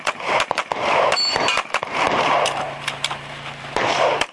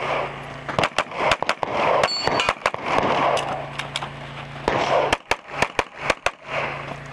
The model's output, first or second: first